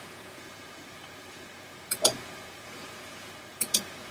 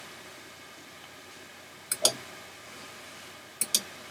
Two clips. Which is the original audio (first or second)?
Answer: second